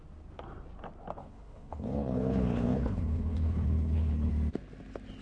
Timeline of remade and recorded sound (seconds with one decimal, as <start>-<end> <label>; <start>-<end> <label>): 0.0-1.2 recorded; 1.2-4.3 remade; 4.3-5.2 recorded